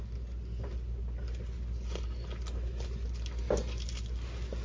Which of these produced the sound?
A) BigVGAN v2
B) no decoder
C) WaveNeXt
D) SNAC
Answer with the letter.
B